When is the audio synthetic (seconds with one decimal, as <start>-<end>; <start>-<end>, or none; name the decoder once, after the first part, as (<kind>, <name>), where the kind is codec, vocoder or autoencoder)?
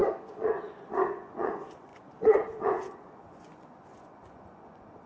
0.0-5.1 (vocoder, Vocos)